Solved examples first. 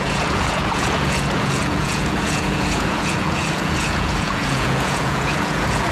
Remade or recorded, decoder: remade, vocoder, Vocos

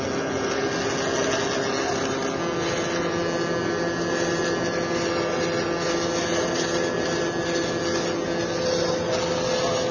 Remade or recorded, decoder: recorded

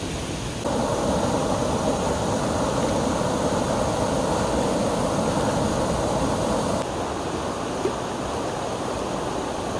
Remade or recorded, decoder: recorded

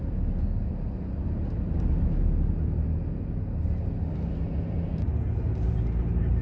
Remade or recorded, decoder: recorded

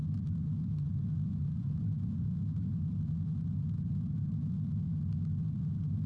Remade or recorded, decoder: recorded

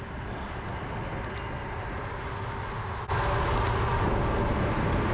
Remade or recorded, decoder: recorded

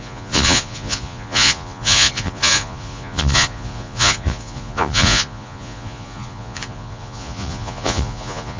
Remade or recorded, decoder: remade, vocoder, Vocos